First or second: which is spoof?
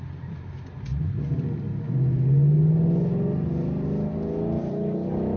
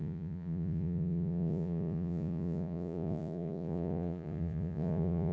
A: second